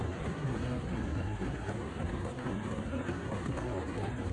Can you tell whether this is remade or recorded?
remade